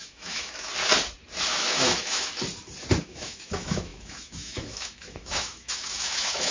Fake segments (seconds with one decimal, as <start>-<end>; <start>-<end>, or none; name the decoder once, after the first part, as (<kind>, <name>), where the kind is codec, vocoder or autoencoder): 0.0-0.7 (autoencoder, DAC-VAE); 1.5-2.3; 3.0-6.5